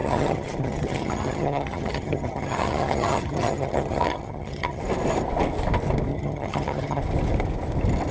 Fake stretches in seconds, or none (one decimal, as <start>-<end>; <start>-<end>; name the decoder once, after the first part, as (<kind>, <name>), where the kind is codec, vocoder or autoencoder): 0.0-4.8 (vocoder, HiFi-GAN); 6.1-7.0